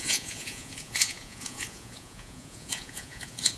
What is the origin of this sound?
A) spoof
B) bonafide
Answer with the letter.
A